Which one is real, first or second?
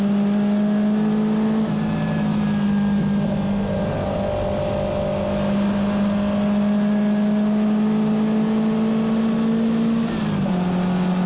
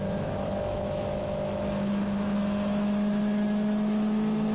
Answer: first